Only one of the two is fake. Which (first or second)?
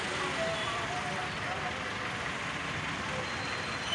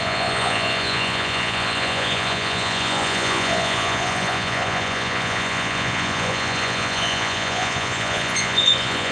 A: second